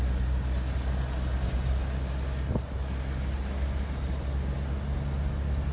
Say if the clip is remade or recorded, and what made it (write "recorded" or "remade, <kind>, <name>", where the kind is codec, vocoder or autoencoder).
recorded